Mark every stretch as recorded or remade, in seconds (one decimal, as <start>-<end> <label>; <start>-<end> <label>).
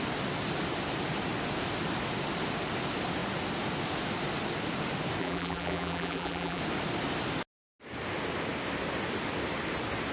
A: 0.0-5.2 recorded; 5.2-6.6 remade; 6.6-10.1 recorded